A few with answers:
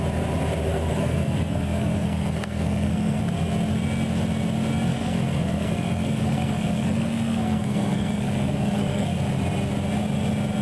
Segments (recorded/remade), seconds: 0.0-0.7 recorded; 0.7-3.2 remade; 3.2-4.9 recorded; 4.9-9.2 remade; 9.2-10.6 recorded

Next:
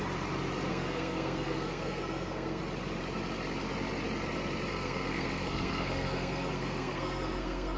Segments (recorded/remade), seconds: 0.0-0.7 recorded; 0.7-2.6 remade; 2.6-4.7 recorded; 4.7-7.8 remade

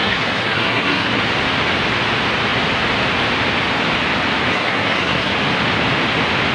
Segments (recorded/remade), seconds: 0.0-1.2 remade; 1.2-4.5 recorded; 4.5-5.3 remade; 5.3-6.5 recorded

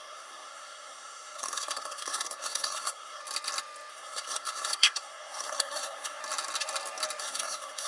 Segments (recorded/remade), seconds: 0.0-3.2 remade; 3.2-3.9 recorded; 3.9-6.2 remade; 6.2-7.2 recorded; 7.2-7.9 remade